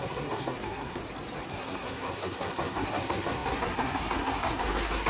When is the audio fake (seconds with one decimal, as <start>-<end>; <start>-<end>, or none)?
0.0-1.0; 1.5-5.1